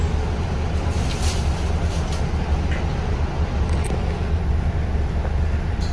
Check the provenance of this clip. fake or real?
real